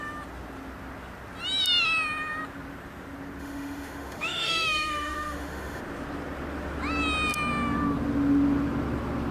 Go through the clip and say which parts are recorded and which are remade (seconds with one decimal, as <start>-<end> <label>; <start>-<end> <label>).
0.0-3.4 recorded; 3.4-5.8 remade; 5.8-9.3 recorded